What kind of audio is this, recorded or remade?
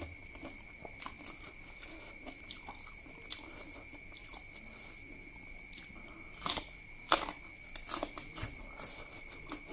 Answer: recorded